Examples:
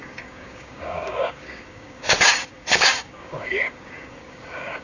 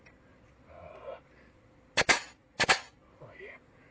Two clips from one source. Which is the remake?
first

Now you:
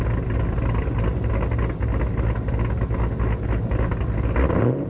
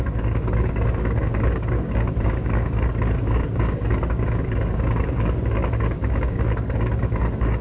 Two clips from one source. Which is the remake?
second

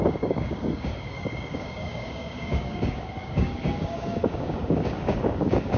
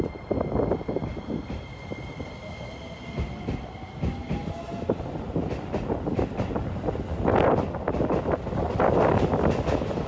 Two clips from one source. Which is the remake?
first